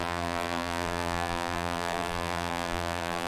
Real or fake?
fake